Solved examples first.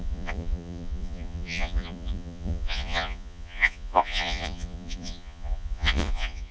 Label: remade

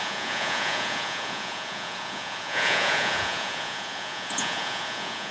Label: remade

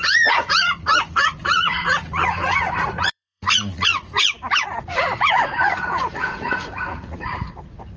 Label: remade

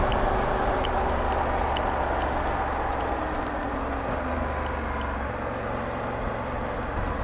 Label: recorded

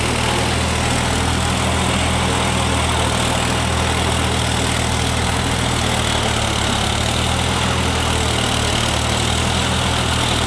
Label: recorded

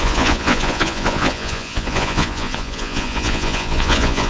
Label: remade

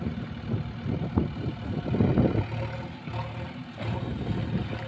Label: recorded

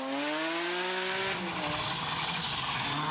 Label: recorded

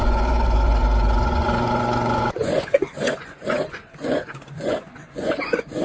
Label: remade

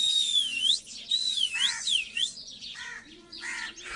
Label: remade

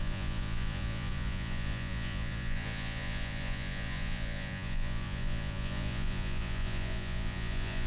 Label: remade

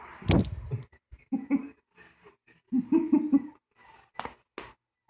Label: recorded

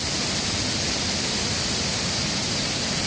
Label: recorded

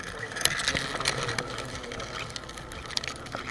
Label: recorded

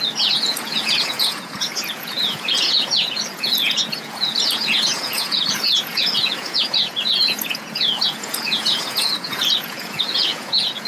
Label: remade